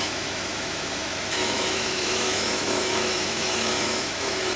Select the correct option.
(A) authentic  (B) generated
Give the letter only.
B